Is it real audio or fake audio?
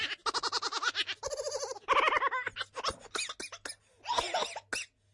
real